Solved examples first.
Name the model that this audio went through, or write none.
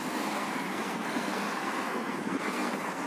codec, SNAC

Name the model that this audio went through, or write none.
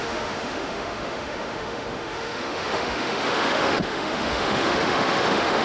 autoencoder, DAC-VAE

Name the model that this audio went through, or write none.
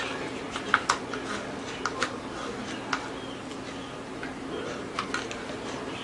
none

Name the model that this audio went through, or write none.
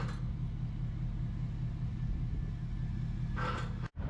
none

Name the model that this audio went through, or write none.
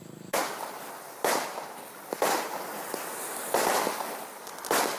none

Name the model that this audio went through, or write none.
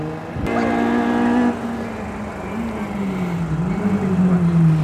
none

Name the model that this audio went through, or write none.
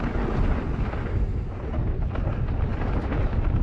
none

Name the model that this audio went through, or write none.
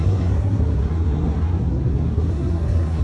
codec, SNAC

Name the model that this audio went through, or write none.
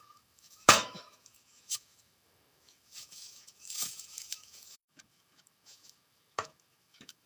autoencoder, DAC-VAE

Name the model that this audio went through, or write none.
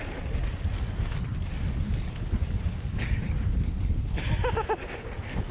none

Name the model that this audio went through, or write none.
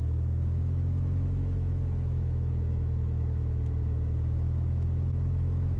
autoencoder, DAC-VAE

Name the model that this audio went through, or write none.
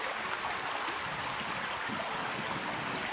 none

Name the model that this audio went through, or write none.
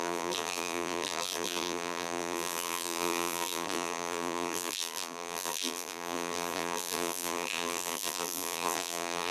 vocoder, BigVGAN v2